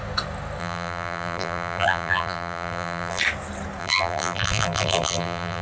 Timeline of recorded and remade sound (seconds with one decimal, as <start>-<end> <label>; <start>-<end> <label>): 0.0-0.6 recorded; 0.6-3.2 remade; 3.2-3.8 recorded; 3.8-5.6 remade